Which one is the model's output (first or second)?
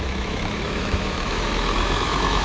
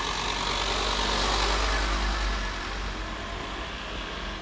first